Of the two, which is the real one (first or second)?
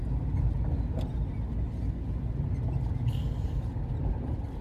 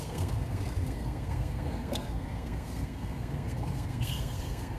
first